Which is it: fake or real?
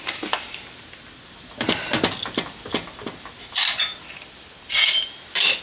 real